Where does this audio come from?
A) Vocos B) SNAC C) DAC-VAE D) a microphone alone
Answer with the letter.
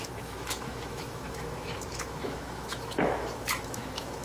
C